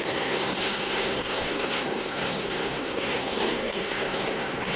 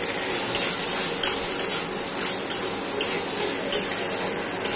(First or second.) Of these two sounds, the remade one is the first